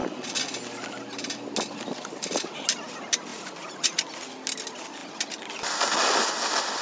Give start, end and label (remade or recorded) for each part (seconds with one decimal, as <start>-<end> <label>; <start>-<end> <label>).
0.0-3.3 recorded; 3.3-4.0 remade; 4.0-6.8 recorded